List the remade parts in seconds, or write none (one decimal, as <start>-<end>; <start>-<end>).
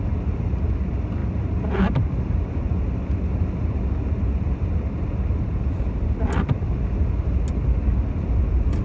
none